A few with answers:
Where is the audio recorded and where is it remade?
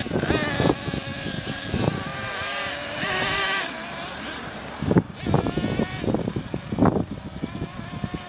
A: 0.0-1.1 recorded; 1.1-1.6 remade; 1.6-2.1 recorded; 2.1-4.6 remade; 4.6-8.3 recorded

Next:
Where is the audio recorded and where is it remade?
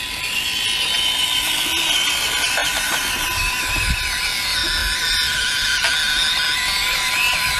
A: 0.0-2.6 recorded; 2.6-3.1 remade; 3.1-7.6 recorded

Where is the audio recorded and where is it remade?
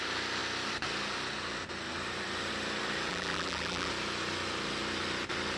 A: 0.0-3.1 recorded; 3.1-3.9 remade; 3.9-5.6 recorded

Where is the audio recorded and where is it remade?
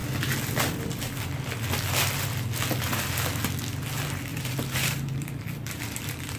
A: 0.0-4.3 recorded; 4.3-5.3 remade; 5.3-6.4 recorded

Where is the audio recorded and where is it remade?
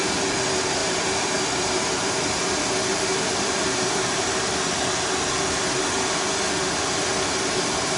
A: 0.0-0.8 recorded; 0.8-2.6 remade; 2.6-3.1 recorded; 3.1-4.5 remade; 4.5-8.0 recorded